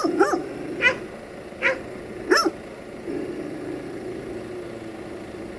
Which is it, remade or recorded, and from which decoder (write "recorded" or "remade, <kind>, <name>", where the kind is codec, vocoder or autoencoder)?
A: recorded